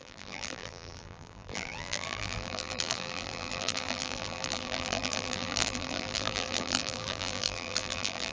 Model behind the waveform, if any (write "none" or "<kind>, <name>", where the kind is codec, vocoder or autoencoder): vocoder, BigVGAN v2